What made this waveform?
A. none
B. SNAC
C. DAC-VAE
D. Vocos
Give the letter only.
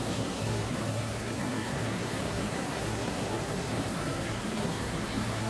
B